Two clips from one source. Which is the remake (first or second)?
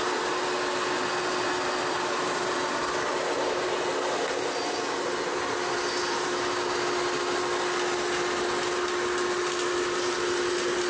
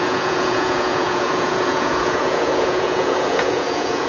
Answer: second